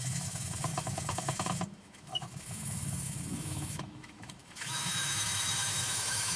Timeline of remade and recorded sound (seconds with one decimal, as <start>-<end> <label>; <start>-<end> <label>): 0.0-6.4 remade